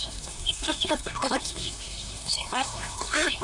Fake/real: fake